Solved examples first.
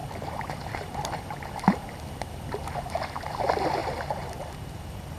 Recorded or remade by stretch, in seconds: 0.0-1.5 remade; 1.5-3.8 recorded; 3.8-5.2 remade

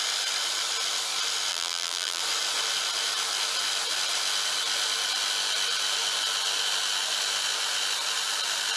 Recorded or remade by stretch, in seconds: 0.0-1.5 recorded; 1.5-2.2 remade; 2.2-8.8 recorded

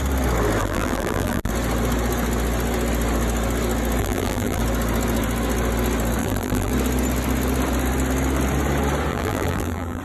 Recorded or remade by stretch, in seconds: 0.0-0.6 recorded; 0.6-1.5 remade; 1.5-4.0 recorded; 4.0-4.6 remade; 4.6-6.2 recorded; 6.2-6.7 remade; 6.7-9.1 recorded; 9.1-10.0 remade

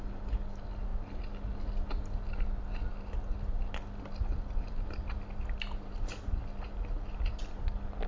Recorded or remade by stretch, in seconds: 0.0-4.3 recorded; 4.3-7.3 remade; 7.3-8.1 recorded